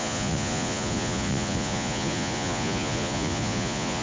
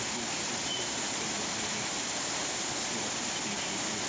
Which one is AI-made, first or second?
first